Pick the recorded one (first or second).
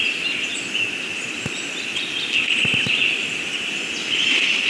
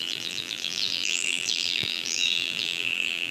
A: first